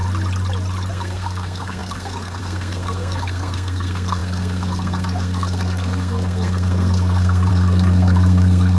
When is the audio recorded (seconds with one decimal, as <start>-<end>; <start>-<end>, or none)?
0.0-0.9

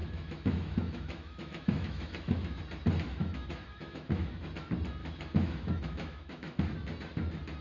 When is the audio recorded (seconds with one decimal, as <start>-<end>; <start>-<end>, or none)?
2.6-3.1; 4.5-5.0; 6.6-7.6